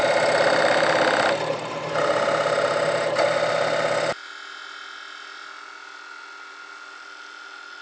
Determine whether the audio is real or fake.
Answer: real